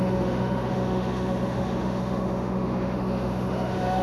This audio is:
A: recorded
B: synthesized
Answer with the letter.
B